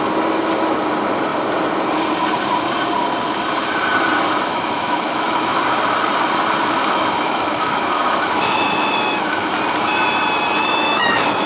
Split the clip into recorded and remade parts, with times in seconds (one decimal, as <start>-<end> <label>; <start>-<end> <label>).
0.0-4.5 recorded; 4.5-5.6 remade; 5.6-6.8 recorded; 6.8-9.5 remade; 9.5-10.6 recorded; 10.6-11.5 remade